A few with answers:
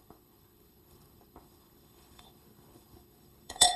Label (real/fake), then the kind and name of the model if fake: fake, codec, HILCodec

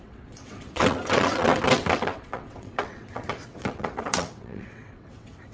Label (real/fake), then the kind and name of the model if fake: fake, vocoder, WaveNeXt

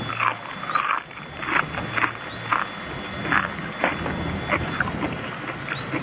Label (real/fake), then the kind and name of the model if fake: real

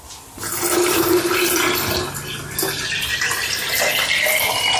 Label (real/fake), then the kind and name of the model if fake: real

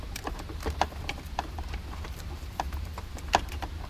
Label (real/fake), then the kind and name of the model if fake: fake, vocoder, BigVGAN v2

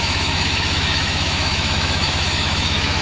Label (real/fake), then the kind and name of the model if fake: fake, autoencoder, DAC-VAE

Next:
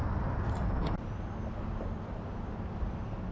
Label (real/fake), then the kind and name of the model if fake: real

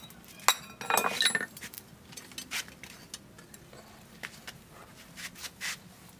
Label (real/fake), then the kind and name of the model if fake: real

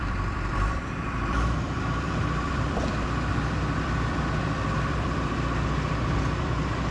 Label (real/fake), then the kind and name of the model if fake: fake, vocoder, BigVGAN v2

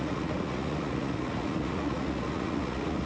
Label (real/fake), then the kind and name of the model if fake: fake, vocoder, Vocos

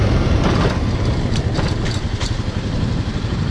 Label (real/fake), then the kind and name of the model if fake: real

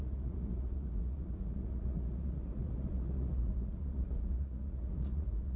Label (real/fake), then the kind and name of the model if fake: fake, vocoder, Vocos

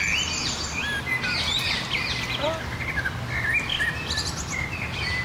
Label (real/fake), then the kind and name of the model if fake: real